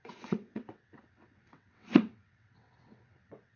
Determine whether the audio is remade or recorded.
remade